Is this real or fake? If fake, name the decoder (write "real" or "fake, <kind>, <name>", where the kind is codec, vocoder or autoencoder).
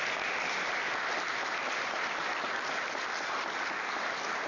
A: real